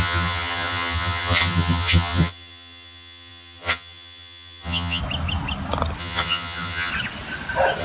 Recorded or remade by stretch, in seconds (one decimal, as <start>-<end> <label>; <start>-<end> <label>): 0.0-5.0 remade; 5.0-6.0 recorded; 6.0-6.9 remade; 6.9-7.8 recorded